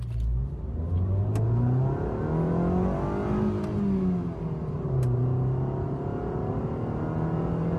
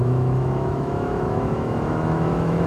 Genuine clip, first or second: first